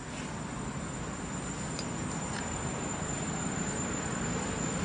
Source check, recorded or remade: recorded